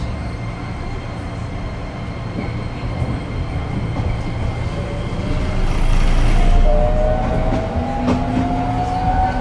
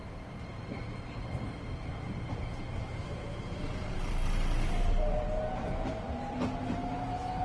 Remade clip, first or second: second